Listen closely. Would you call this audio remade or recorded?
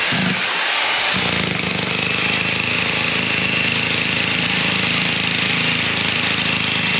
recorded